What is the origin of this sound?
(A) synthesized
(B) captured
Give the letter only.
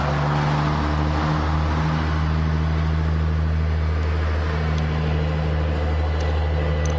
B